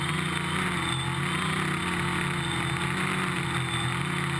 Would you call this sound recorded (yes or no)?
yes